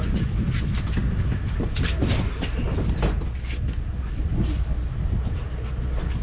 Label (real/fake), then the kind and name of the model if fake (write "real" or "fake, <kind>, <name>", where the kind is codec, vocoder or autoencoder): real